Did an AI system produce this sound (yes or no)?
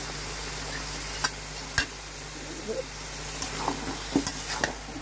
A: no